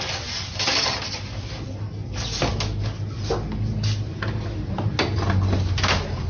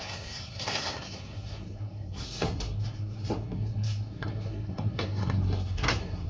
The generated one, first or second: second